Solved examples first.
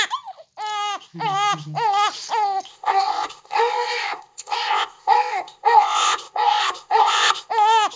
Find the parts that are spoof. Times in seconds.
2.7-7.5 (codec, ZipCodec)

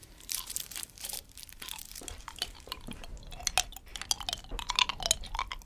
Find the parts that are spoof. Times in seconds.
0.0-3.1 (vocoder, BigVGAN v2)

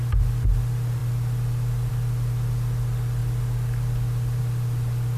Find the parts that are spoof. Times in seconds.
none

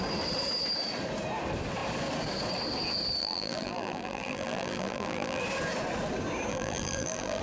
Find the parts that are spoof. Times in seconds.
3.2-5.4 (vocoder, BigVGAN v2); 6.5-7.4